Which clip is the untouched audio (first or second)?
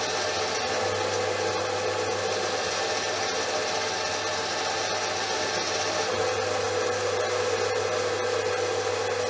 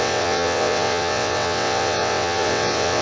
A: first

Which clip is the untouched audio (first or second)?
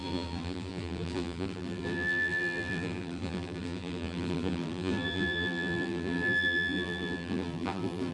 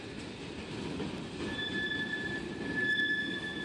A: second